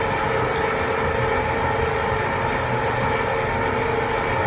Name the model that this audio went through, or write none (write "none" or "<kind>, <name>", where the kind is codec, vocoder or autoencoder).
none